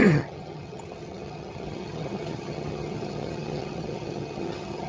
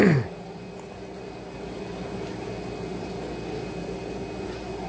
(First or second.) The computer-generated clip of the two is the first